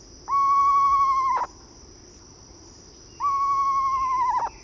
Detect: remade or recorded recorded